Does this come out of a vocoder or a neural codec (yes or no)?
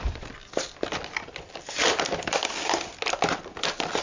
no